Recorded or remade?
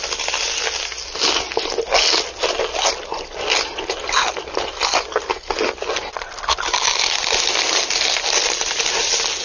recorded